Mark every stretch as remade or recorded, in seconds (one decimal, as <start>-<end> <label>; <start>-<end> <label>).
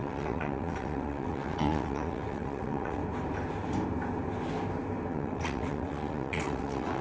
0.0-3.0 remade; 3.0-5.1 recorded; 5.1-7.0 remade